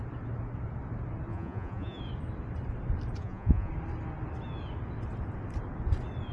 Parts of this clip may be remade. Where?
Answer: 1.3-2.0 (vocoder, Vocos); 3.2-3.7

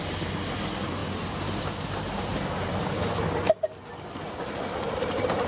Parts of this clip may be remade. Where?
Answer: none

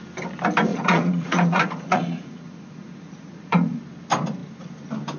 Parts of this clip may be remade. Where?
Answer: 0.7-3.8 (vocoder, Vocos)

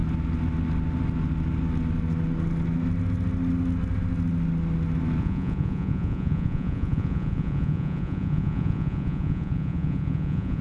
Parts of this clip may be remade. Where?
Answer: 5.2-10.6 (vocoder, Vocos)